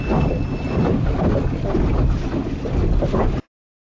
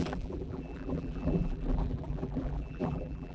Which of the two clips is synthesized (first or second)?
second